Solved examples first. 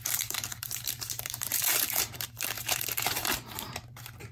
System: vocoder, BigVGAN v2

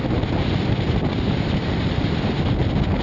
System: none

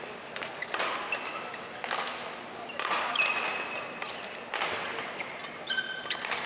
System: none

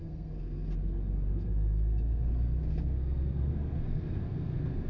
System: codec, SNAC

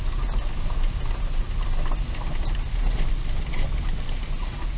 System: none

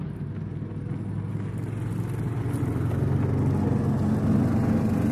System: none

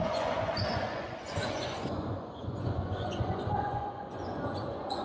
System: vocoder, Vocos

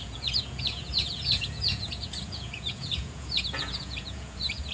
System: vocoder, Vocos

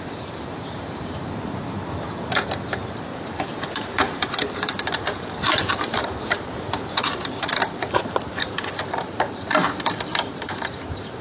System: vocoder, BigVGAN v2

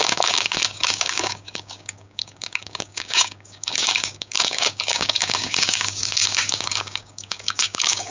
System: codec, DAC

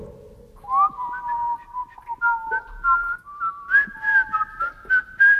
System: none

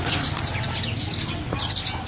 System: none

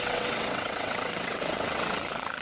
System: vocoder, WaveNeXt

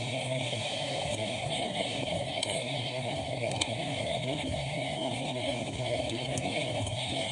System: codec, SNAC